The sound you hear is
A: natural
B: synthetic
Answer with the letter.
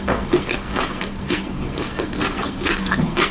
B